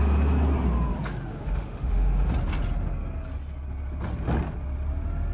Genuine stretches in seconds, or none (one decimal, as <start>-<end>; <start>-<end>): 0.0-1.3; 2.3-5.3